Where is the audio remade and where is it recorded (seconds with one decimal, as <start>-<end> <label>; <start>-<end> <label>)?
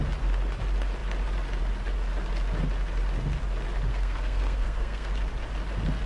0.0-3.9 recorded; 3.9-5.1 remade; 5.1-6.1 recorded